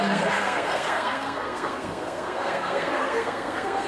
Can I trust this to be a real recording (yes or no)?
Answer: no